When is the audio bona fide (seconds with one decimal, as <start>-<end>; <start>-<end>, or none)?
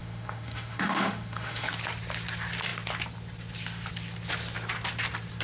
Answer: 1.7-5.4